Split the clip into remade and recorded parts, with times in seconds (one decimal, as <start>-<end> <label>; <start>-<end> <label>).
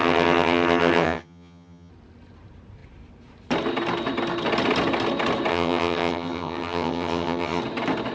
0.0-1.9 remade; 1.9-5.5 recorded; 5.5-7.6 remade; 7.6-8.1 recorded